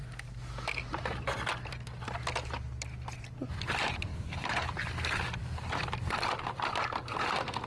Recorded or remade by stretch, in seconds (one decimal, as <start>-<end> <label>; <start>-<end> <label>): 0.0-4.1 recorded; 4.1-4.7 remade; 4.7-7.7 recorded